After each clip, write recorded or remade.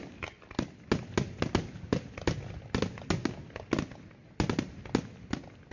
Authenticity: recorded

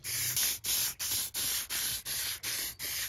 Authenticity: recorded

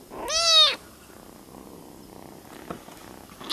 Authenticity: recorded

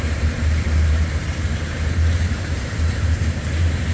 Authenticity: remade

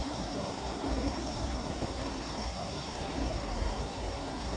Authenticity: remade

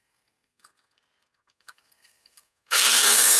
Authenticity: remade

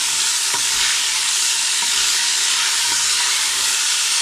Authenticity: remade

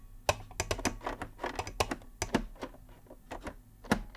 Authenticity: recorded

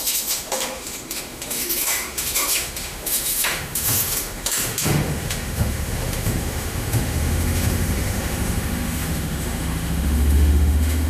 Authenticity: remade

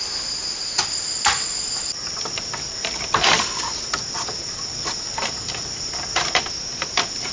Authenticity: recorded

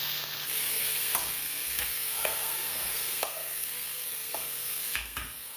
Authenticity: remade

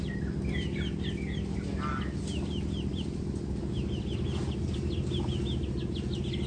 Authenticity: recorded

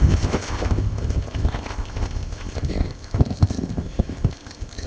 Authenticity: remade